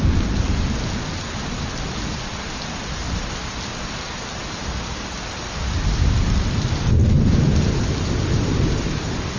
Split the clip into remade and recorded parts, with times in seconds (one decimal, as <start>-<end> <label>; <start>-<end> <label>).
0.0-9.4 recorded